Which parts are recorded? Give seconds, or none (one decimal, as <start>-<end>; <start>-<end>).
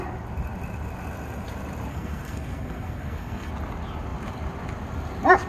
0.0-1.9; 3.5-5.5